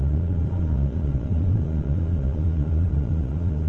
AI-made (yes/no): yes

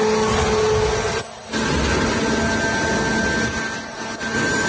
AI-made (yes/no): no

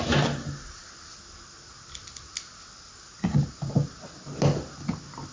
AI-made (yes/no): no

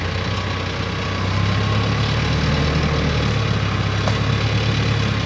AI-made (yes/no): no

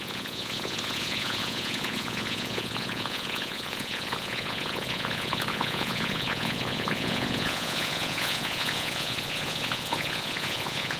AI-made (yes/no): yes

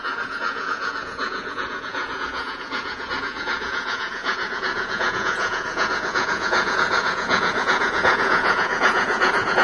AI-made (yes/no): yes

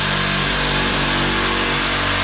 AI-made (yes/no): no